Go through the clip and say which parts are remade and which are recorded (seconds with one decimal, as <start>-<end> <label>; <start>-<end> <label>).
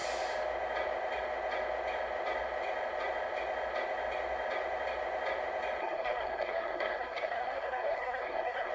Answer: 0.0-5.8 recorded; 5.8-8.7 remade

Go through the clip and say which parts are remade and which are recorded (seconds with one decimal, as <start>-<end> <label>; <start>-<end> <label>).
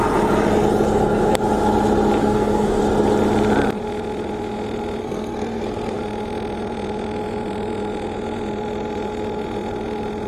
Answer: 0.0-2.2 recorded; 2.2-2.8 remade; 2.8-5.0 recorded; 5.0-6.0 remade; 6.0-10.3 recorded